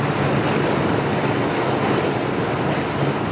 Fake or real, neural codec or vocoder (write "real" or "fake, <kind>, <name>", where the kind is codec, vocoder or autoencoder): real